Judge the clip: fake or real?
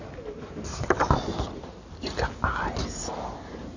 real